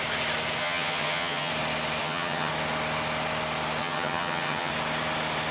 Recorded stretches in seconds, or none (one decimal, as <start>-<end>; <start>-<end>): 0.0-0.6; 1.5-2.0; 2.5-3.8; 4.7-5.5